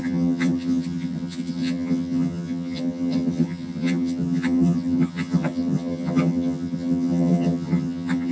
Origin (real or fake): fake